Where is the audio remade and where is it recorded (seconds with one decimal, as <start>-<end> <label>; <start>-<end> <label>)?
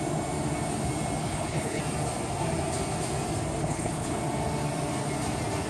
0.0-1.2 recorded; 1.2-1.8 remade; 1.8-3.6 recorded; 3.6-4.1 remade; 4.1-5.7 recorded